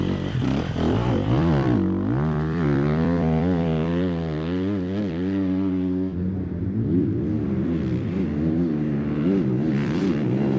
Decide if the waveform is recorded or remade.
remade